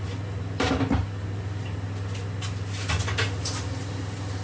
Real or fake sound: real